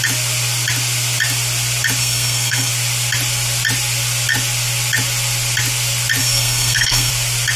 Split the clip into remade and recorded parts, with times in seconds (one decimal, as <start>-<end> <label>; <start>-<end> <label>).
0.0-2.0 recorded; 2.0-2.7 remade; 2.7-6.2 recorded; 6.2-7.1 remade; 7.1-7.6 recorded